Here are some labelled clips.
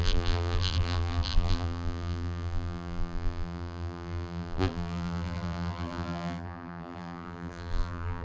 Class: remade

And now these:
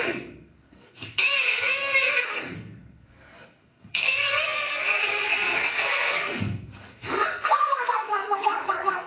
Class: remade